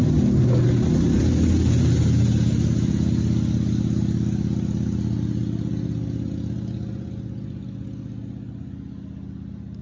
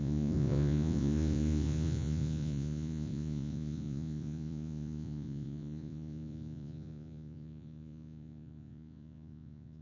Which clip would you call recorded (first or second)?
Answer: first